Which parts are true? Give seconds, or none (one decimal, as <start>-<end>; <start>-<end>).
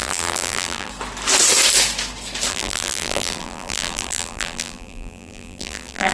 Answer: 0.9-2.5